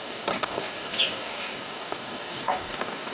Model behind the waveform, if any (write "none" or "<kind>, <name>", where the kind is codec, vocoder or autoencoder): codec, DAC